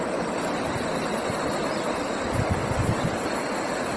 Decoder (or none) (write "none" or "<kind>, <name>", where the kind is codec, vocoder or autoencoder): none